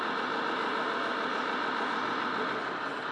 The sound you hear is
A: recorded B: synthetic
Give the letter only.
A